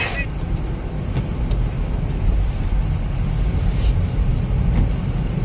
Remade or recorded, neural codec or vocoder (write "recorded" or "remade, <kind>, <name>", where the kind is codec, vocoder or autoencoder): recorded